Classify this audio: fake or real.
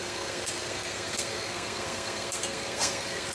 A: fake